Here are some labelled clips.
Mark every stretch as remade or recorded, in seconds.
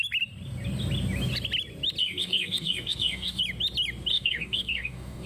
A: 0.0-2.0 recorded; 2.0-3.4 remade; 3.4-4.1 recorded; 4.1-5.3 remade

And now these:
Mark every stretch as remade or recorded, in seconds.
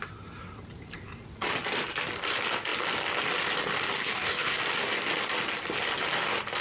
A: 0.0-4.1 recorded; 4.1-4.6 remade; 4.6-6.6 recorded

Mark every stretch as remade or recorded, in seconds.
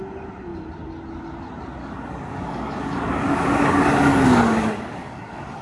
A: 0.0-1.8 recorded; 1.8-5.6 remade